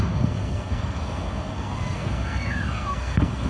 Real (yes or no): no